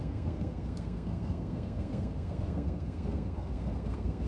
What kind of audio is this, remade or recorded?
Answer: remade